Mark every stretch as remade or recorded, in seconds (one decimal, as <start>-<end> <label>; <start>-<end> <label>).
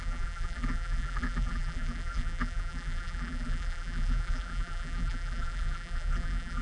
0.0-6.6 remade